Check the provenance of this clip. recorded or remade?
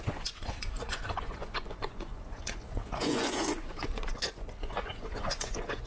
remade